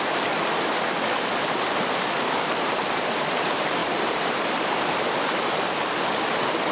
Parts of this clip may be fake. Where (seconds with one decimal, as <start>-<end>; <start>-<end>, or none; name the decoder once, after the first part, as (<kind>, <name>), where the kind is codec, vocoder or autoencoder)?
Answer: 3.8-4.9 (vocoder, BigVGAN v2)